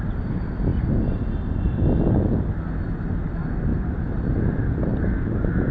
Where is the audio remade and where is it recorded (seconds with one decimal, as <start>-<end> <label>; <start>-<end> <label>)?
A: 0.0-3.7 recorded; 3.7-4.2 remade; 4.2-5.7 recorded

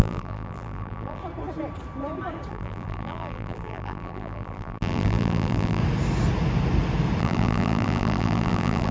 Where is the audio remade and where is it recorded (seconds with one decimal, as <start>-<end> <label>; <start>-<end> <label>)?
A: 0.0-1.2 remade; 1.2-2.5 recorded; 2.5-5.8 remade; 5.8-7.2 recorded; 7.2-8.9 remade

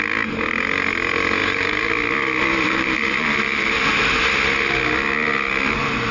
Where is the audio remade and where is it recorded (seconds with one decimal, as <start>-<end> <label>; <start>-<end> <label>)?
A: 0.0-1.4 recorded; 1.4-1.9 remade; 1.9-2.4 recorded; 2.4-4.2 remade; 4.2-6.1 recorded

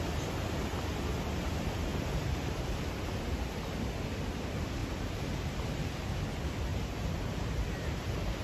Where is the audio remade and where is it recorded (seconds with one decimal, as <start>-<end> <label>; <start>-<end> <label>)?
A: 0.0-1.9 recorded; 1.9-2.8 remade; 2.8-4.8 recorded; 4.8-6.1 remade; 6.1-6.7 recorded; 6.7-8.4 remade

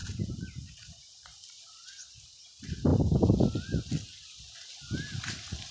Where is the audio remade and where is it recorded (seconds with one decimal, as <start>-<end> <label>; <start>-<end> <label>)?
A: 0.0-2.1 remade; 2.1-5.7 recorded